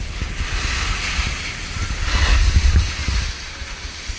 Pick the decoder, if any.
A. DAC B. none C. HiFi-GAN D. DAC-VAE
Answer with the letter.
B